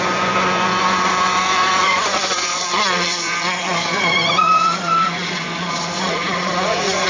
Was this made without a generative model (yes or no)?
no